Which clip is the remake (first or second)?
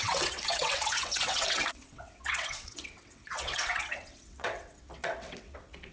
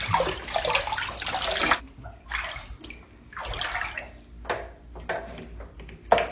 first